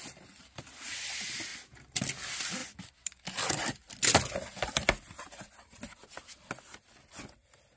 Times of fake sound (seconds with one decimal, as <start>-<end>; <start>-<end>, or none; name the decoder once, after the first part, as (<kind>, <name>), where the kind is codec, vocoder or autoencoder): none